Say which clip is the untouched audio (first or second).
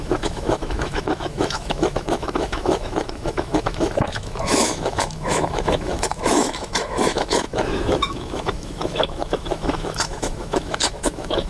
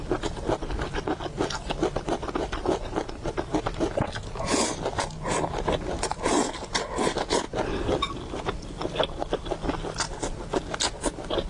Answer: second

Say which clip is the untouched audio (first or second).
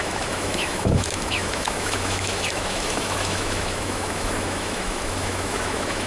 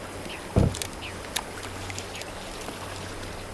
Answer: second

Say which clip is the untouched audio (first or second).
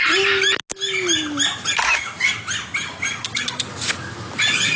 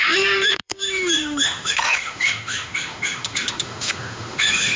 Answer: first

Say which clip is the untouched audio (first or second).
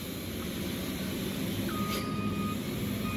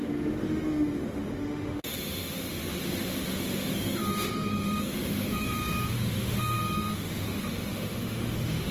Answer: first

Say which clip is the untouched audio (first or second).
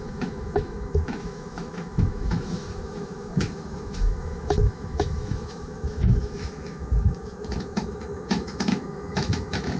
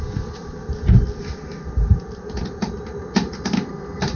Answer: second